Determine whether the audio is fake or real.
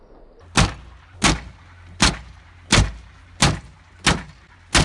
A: real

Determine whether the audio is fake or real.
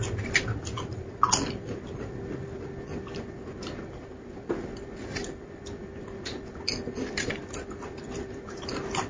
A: real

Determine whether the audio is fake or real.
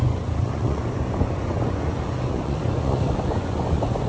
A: fake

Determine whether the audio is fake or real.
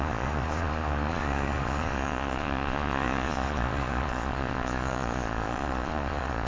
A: fake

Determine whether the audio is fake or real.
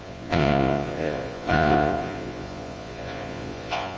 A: fake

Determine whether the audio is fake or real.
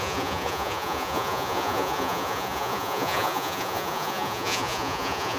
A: fake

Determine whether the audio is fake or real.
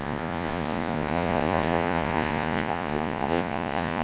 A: fake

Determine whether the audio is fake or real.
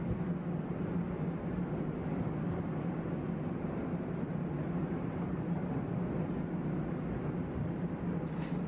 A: real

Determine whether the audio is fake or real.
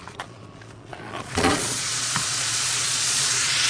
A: fake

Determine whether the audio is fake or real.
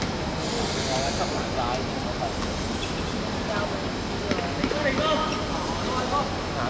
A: real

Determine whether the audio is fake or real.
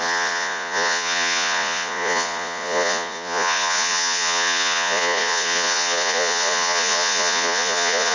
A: fake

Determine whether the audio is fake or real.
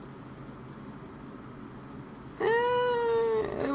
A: real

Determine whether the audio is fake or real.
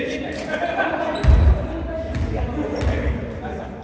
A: real